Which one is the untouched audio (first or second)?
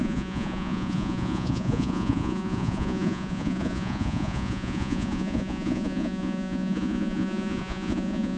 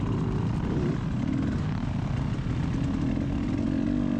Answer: second